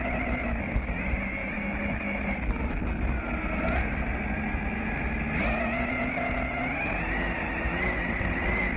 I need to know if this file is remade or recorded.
recorded